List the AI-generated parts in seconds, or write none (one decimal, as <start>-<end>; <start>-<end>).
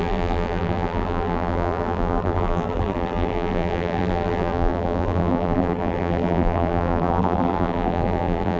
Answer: 0.0-8.6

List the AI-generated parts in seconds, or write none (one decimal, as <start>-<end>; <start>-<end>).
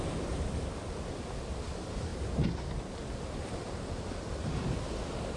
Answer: none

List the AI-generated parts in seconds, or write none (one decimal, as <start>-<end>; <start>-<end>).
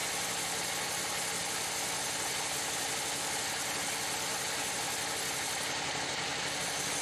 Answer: none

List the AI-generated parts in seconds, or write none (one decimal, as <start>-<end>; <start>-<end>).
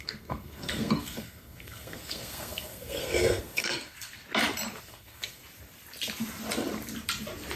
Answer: 0.0-4.2; 4.8-5.4